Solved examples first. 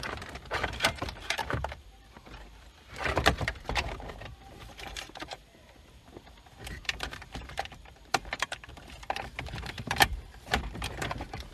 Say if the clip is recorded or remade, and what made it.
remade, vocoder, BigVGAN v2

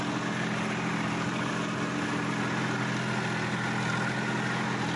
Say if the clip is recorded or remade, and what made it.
recorded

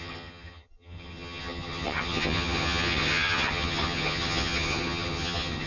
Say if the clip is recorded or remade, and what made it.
remade, vocoder, HiFi-GAN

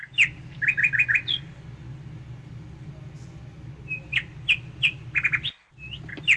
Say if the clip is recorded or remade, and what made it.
recorded